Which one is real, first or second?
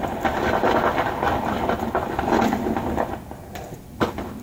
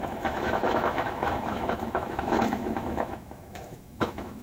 first